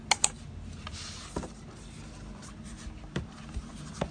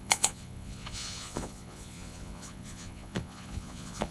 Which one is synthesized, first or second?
second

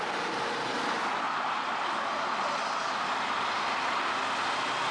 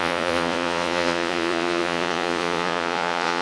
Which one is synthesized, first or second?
second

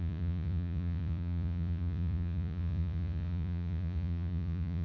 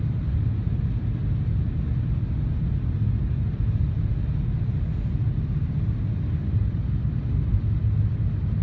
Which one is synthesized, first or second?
first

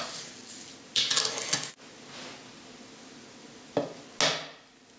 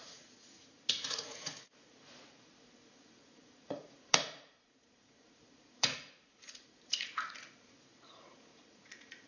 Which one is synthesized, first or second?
second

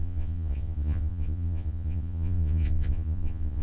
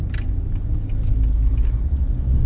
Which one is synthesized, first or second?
first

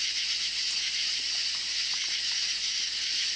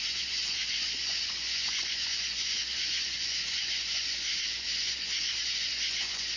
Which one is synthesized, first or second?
second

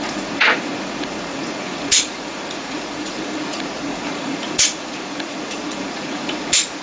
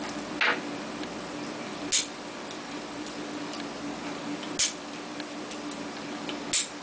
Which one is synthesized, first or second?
first